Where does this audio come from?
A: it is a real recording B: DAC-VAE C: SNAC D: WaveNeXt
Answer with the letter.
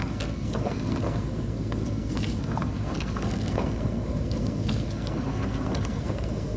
C